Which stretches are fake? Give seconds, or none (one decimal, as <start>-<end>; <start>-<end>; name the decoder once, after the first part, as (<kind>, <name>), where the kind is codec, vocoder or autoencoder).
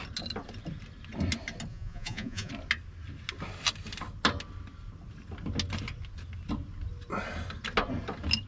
1.7-2.5 (vocoder, Vocos)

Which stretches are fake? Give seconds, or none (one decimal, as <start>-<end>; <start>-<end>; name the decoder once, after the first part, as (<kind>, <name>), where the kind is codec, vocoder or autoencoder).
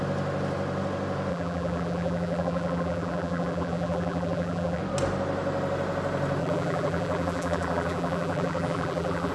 1.3-4.8 (vocoder, BigVGAN v2); 6.4-9.3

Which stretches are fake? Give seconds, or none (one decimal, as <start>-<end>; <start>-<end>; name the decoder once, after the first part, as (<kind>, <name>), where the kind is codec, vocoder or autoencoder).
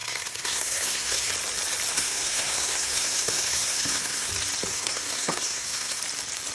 0.0-1.3 (codec, SNAC); 1.9-4.3; 4.7-6.0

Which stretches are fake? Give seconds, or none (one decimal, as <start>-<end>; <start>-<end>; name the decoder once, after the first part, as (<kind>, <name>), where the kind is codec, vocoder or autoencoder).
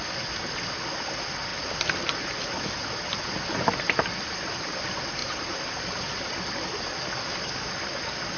1.5-2.3 (vocoder, BigVGAN v2); 2.8-4.5; 5.2-5.8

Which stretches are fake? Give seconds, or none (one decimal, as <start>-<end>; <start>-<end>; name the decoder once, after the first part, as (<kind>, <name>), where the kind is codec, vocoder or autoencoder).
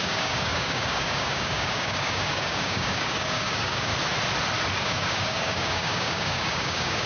0.0-3.9 (codec, DAC); 4.8-7.1